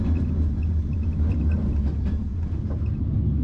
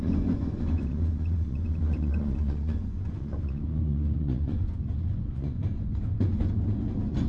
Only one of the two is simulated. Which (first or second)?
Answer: second